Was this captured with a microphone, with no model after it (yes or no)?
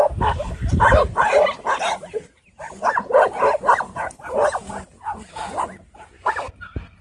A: yes